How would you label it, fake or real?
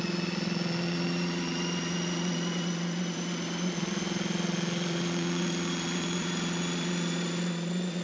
fake